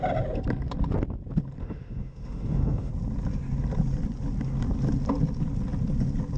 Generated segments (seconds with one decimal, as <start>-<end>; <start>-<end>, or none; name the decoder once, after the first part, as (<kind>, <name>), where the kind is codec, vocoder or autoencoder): 1.6-2.9 (autoencoder, DAC-VAE)